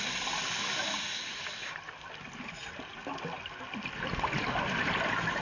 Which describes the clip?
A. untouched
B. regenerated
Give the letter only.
A